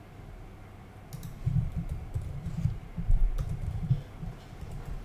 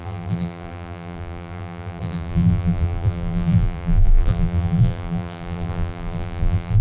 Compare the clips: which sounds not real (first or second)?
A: second